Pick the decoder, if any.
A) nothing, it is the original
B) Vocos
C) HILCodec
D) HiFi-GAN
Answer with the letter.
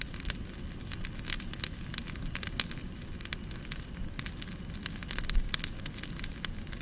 A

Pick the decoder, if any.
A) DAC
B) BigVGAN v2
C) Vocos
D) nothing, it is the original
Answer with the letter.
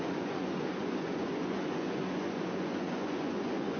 C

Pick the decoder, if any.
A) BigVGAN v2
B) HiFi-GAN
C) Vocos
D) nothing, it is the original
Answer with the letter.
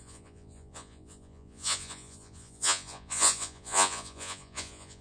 C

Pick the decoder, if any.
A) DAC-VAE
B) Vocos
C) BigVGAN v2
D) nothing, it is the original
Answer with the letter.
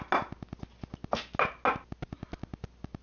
D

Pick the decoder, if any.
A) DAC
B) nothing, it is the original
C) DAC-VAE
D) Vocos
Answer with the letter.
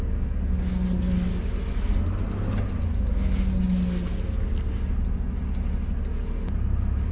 B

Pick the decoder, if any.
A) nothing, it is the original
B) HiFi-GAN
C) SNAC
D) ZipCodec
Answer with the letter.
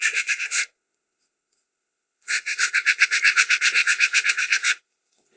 D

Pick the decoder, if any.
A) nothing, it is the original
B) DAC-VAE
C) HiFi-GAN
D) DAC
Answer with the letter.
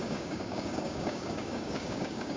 D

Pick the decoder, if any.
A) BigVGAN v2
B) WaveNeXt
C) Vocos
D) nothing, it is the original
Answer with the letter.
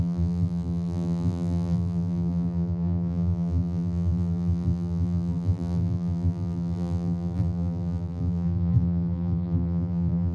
A